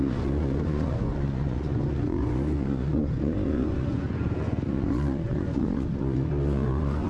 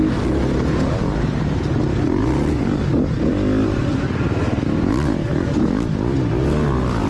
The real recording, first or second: second